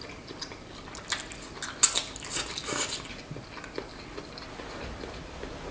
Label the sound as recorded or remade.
recorded